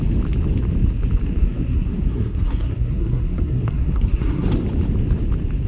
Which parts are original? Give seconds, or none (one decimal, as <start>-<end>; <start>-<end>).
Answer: 0.0-1.4; 4.5-5.7